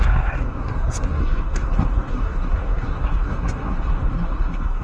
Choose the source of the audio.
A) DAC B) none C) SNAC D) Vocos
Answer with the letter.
C